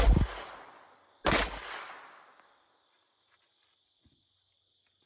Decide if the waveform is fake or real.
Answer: real